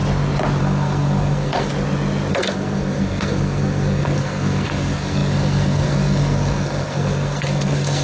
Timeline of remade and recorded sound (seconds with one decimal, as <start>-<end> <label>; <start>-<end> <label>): 0.0-0.6 recorded; 0.6-1.7 remade; 1.7-2.3 recorded; 2.3-8.0 remade